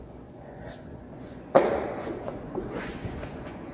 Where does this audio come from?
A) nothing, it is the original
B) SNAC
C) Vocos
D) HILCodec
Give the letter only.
C